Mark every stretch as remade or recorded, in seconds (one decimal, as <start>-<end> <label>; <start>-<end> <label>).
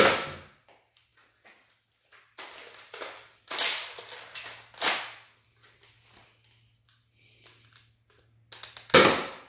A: 0.0-9.5 recorded